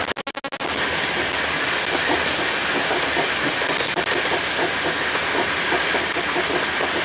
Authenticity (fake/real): real